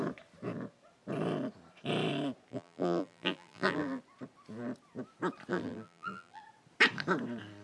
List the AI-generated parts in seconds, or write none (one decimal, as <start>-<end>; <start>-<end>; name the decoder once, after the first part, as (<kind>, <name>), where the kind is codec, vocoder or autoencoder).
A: 2.5-4.0 (vocoder, BigVGAN v2); 5.5-6.4